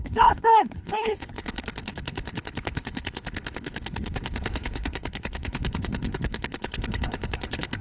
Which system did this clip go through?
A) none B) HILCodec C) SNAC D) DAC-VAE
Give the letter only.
B